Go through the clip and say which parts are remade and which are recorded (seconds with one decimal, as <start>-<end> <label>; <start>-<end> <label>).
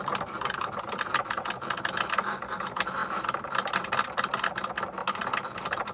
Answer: 0.0-5.9 recorded